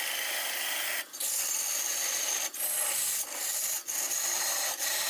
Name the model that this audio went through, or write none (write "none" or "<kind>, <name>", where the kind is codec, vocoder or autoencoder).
none